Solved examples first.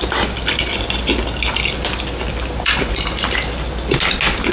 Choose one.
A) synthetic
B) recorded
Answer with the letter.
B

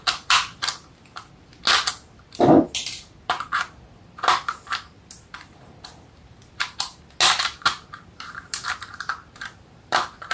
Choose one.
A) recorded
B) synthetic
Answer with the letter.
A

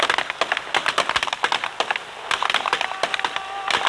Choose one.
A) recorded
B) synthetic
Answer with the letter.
A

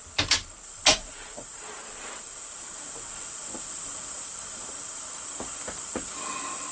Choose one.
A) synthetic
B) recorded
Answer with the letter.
B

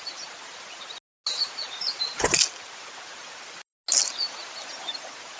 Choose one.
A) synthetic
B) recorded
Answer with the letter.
B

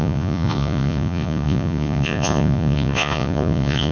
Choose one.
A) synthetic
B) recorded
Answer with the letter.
A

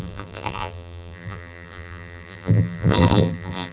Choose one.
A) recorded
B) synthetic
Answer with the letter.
B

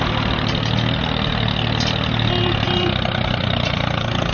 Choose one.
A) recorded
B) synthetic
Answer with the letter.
A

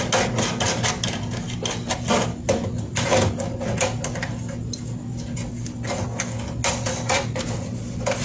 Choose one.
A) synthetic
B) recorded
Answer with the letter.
B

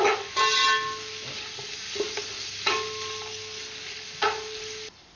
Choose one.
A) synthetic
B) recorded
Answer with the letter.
B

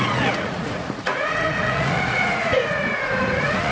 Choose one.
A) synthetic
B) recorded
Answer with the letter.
A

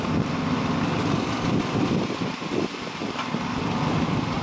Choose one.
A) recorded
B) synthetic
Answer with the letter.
B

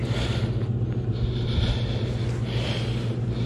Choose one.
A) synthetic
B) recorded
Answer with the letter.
B